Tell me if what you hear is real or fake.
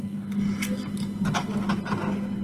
real